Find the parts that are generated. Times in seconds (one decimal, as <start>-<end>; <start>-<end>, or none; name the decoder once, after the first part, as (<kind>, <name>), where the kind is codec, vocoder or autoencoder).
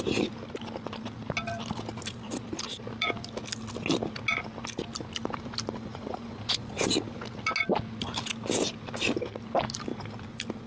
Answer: 5.9-6.9 (vocoder, Vocos)